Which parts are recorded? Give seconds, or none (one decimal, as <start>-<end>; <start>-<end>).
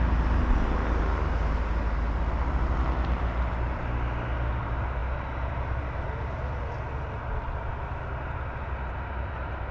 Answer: 0.0-9.7